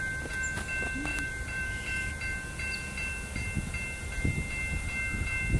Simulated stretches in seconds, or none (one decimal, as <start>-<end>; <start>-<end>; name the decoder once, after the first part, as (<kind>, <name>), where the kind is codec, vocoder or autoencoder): 1.1-2.1 (vocoder, BigVGAN v2)